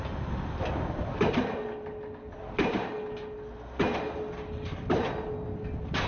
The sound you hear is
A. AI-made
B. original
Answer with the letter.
B